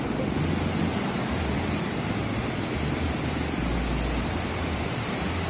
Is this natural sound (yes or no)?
yes